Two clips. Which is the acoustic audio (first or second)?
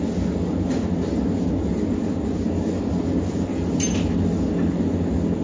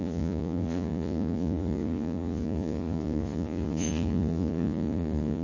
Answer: first